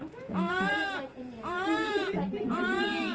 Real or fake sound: fake